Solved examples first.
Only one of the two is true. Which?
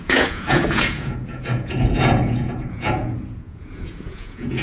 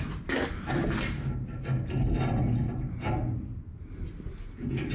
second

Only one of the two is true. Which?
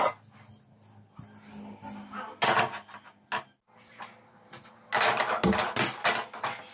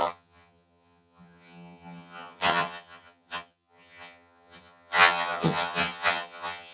first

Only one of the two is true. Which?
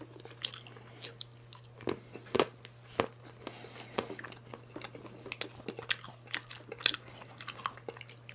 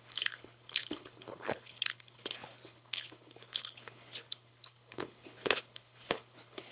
first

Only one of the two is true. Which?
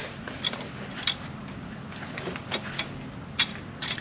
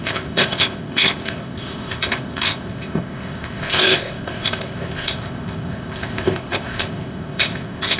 first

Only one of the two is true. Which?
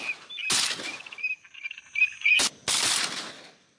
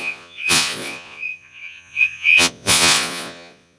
first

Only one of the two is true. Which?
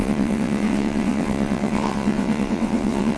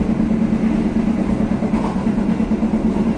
second